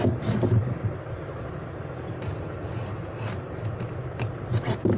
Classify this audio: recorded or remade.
recorded